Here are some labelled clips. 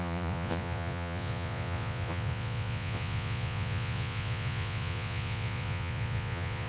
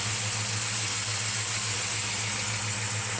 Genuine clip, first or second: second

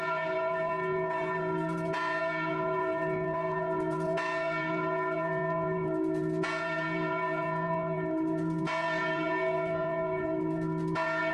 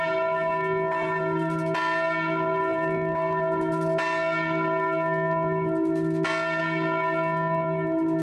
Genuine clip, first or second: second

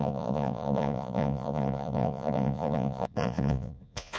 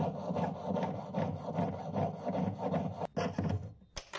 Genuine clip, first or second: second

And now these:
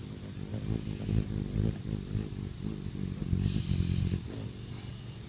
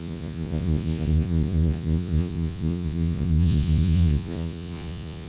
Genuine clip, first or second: first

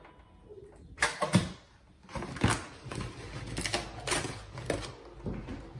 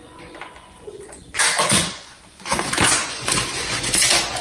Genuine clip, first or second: first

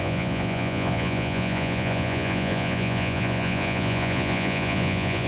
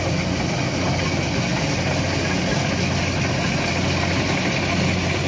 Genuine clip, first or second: second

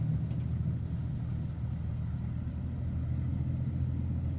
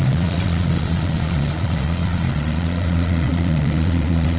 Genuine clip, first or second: first